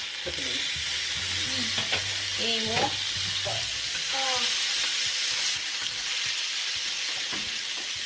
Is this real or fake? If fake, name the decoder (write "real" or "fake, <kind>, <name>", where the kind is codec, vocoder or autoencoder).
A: real